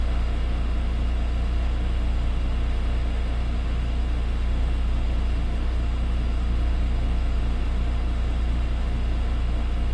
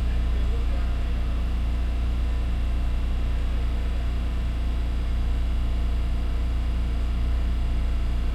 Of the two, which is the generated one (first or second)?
first